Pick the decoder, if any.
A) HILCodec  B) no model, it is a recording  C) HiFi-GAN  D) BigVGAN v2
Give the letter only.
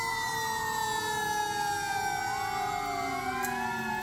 B